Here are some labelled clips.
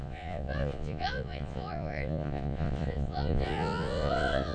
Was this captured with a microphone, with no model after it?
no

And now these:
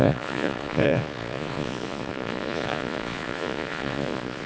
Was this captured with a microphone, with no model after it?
no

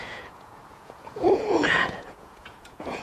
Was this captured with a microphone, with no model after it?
no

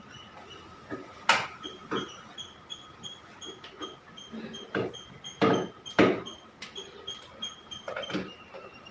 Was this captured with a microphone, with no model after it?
yes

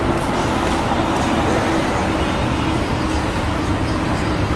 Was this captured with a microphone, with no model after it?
yes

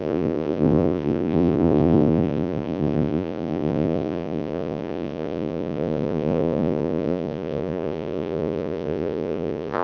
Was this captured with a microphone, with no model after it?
no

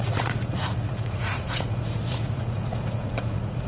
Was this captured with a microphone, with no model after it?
no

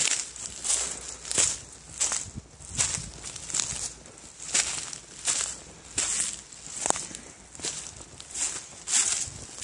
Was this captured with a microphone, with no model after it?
yes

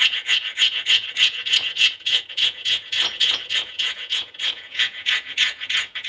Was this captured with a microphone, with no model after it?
no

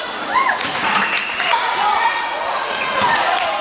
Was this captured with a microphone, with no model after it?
no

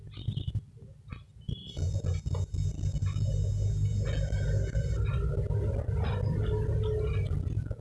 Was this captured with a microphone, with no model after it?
yes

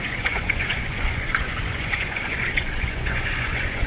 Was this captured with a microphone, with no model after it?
no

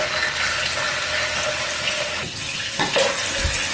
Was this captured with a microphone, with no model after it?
yes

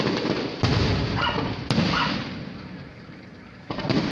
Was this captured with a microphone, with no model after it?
yes